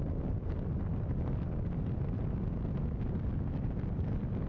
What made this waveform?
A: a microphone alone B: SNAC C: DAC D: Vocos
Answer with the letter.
A